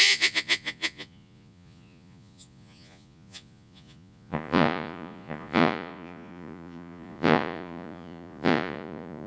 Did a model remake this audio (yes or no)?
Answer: yes